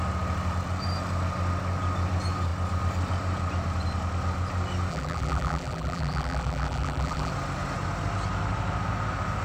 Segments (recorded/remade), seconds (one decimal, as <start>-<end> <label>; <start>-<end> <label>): 0.0-4.9 recorded; 4.9-7.3 remade; 7.3-9.4 recorded